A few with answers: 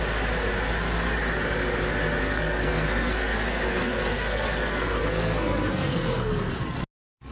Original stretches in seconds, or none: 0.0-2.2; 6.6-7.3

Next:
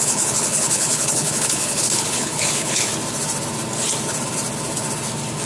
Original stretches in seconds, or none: 2.9-5.5

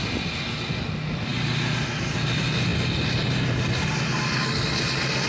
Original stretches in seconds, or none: 0.0-5.3

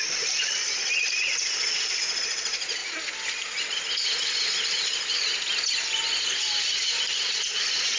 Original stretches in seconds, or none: 2.8-4.2; 5.3-6.2

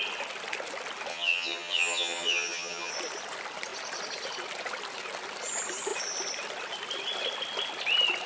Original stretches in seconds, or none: 0.0-1.1; 2.9-8.3

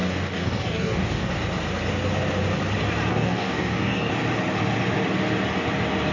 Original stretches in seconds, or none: 1.3-3.1; 4.1-6.1

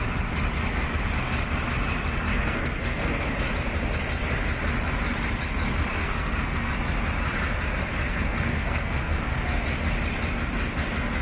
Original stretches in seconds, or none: 0.0-2.3; 3.4-5.9; 6.7-8.0; 9.3-11.2